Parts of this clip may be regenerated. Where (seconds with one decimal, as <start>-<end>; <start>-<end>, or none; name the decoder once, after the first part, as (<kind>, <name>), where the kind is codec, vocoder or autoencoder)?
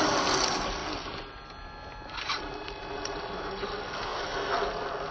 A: none